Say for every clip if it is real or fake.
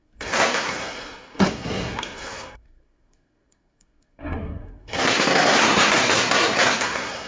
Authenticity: fake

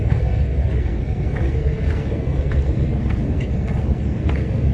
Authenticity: fake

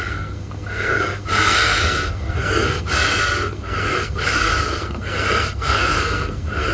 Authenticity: fake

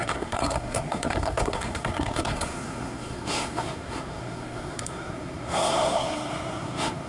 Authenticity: fake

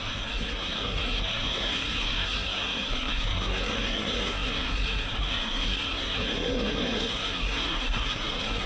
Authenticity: fake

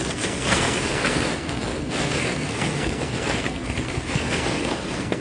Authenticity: fake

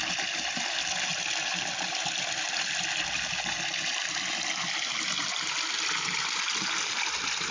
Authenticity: real